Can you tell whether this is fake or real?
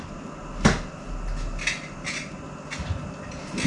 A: real